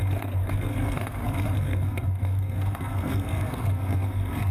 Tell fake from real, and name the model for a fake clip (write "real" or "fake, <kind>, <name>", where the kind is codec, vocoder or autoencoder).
fake, codec, SNAC